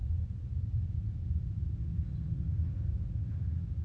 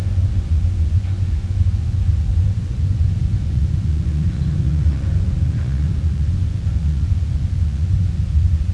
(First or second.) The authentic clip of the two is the first